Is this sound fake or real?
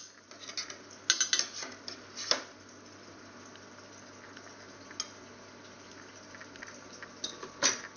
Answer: real